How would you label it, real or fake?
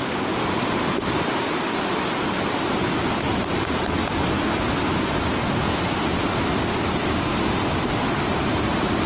real